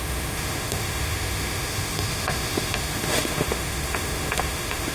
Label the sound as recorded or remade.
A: remade